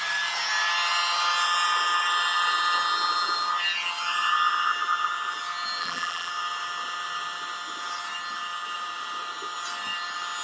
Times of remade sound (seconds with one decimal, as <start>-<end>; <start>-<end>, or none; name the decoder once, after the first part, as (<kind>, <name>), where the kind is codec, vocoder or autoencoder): 5.8-6.3 (vocoder, BigVGAN v2)